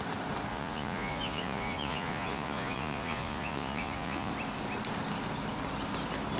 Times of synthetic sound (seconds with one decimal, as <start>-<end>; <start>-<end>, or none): 0.5-4.3